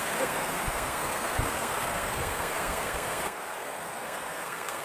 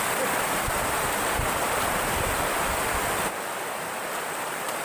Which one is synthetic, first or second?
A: first